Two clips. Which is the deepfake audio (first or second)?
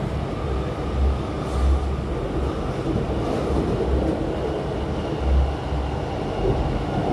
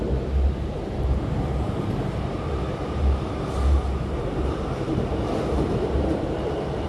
second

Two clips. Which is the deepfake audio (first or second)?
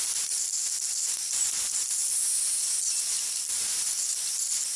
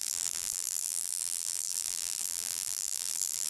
second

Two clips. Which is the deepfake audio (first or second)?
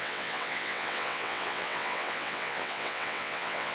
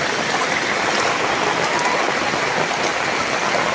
first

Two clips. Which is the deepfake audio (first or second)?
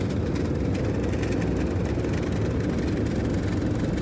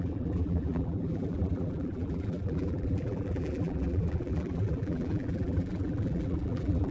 second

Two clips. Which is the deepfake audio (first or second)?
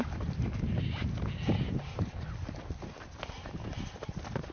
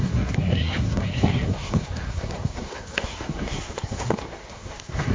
second